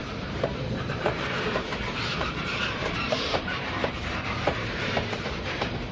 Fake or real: fake